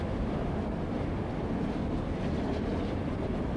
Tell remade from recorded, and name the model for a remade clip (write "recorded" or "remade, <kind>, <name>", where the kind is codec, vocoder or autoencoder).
recorded